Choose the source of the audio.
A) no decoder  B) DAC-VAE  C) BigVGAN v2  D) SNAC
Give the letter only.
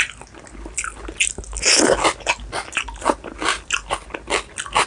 A